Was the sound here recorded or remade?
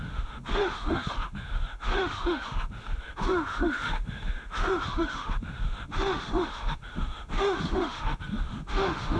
remade